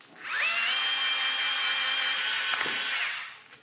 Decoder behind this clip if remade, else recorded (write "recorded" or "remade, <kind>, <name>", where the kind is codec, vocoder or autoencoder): recorded